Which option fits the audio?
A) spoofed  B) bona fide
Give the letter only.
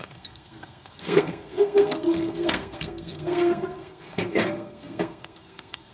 A